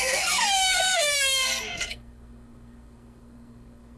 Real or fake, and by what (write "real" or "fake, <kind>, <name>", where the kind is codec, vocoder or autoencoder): fake, codec, SNAC